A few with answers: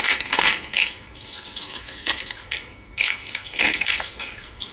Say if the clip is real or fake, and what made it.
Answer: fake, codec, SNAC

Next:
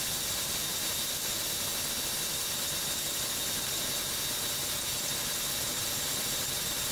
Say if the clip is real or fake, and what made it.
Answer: real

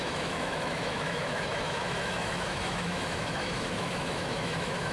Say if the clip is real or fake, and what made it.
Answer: fake, autoencoder, DAC-VAE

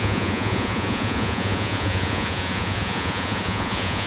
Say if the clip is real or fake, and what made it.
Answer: fake, vocoder, Vocos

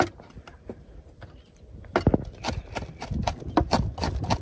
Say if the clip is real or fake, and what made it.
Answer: real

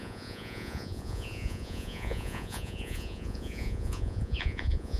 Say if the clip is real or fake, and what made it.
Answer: fake, vocoder, Vocos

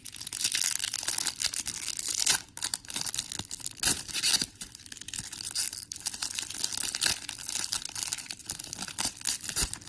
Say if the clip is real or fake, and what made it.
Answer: real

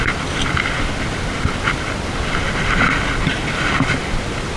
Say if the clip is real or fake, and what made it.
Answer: real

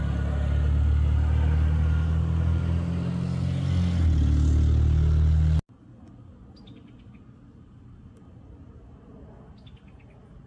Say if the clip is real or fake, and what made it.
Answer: real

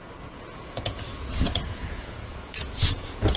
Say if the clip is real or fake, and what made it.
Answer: fake, vocoder, Vocos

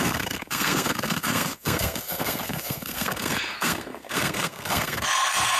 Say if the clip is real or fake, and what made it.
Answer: fake, codec, SNAC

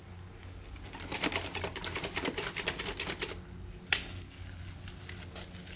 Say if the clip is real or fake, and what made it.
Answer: real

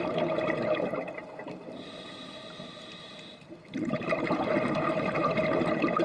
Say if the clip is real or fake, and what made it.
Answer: real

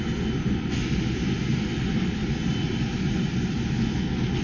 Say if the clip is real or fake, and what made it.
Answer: real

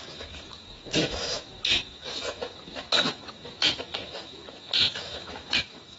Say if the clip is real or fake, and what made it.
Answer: fake, autoencoder, DAC-VAE